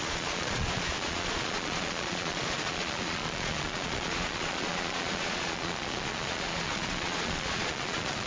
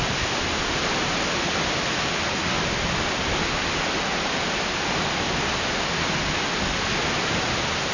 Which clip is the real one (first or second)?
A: second